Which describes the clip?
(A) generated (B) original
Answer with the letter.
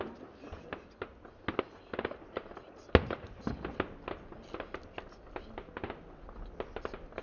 B